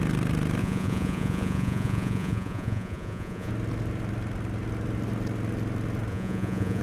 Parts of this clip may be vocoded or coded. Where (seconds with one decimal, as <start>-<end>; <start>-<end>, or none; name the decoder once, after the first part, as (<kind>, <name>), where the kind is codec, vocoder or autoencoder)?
0.6-3.5 (vocoder, Vocos); 6.1-6.8